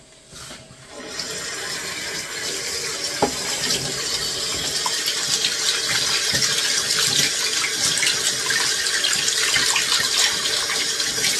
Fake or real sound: real